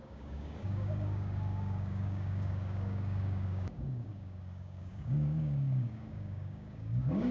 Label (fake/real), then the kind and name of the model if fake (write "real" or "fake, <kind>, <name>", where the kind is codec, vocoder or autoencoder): fake, codec, DAC